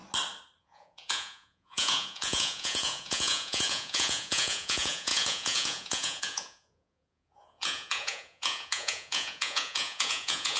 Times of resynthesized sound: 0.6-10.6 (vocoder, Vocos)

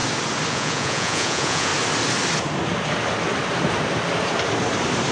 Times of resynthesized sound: 0.5-1.7 (vocoder, Vocos)

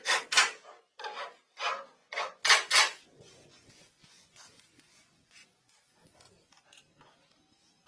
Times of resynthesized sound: 2.0-6.1 (vocoder, Vocos)

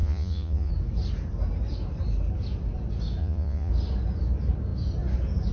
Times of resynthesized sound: 0.0-0.7 (vocoder, Vocos); 3.2-3.7